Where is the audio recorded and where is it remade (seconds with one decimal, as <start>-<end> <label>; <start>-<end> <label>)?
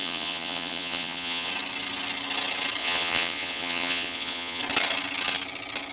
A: 0.0-1.5 remade; 1.5-2.8 recorded; 2.8-4.6 remade; 4.6-5.9 recorded